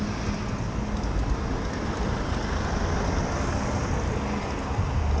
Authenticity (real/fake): real